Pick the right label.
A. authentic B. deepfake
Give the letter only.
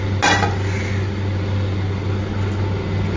A